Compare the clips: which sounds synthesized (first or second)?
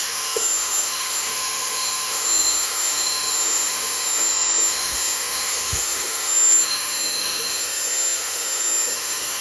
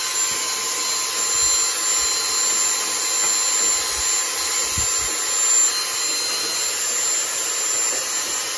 first